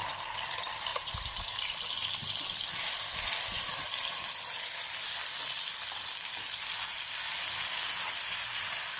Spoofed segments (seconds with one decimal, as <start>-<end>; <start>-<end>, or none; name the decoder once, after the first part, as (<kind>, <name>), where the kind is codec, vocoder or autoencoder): 0.9-1.6 (vocoder, BigVGAN v2)